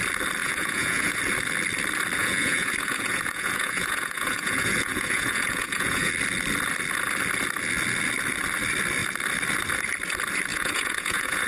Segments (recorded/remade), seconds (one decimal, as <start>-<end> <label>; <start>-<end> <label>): 0.0-0.4 recorded; 0.4-1.2 remade; 1.2-2.2 recorded; 2.2-6.1 remade; 6.1-10.5 recorded; 10.5-11.5 remade